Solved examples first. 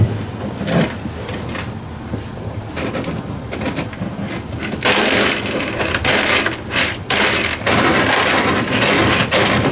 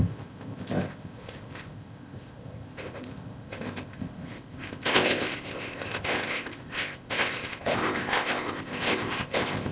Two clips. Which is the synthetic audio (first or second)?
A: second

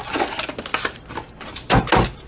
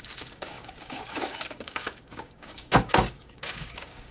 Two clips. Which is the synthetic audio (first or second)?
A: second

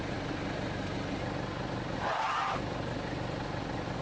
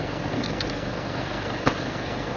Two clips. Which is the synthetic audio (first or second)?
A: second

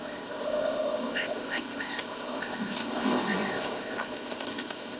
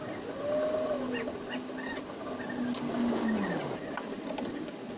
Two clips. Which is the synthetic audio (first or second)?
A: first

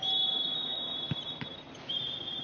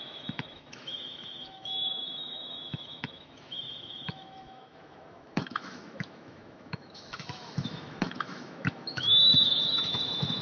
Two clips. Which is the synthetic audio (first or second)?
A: second